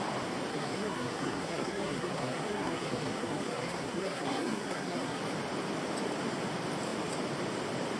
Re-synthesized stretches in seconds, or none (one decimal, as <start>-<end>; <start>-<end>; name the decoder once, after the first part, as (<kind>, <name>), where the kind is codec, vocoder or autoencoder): 0.5-5.2 (codec, SNAC)